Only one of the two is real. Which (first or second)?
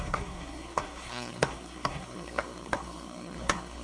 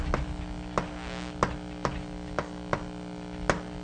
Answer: second